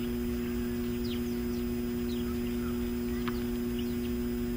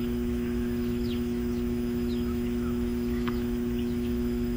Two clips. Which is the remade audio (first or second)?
second